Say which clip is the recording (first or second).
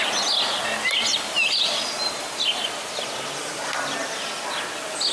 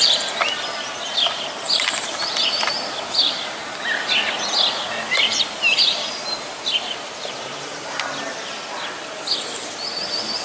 first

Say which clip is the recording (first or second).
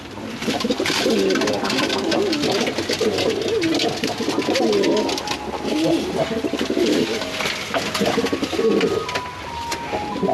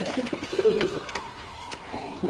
first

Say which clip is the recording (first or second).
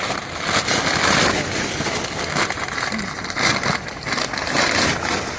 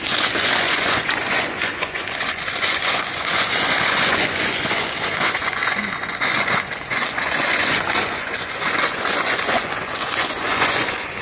first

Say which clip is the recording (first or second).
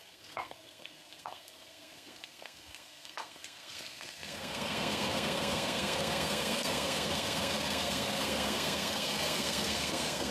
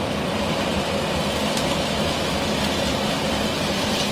second